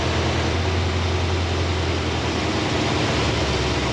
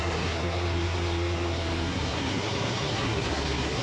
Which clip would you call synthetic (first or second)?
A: second